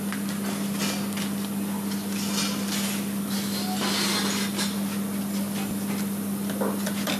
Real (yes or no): yes